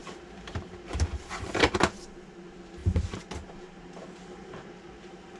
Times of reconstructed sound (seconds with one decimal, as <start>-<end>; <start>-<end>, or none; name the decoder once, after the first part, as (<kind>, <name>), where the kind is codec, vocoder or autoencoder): 0.0-1.8 (vocoder, BigVGAN v2); 2.8-4.9